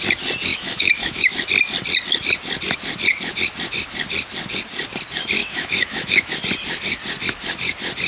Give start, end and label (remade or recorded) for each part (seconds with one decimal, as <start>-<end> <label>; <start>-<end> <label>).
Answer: 0.0-0.5 recorded; 0.5-1.3 remade; 1.3-5.4 recorded; 5.4-6.3 remade; 6.3-8.1 recorded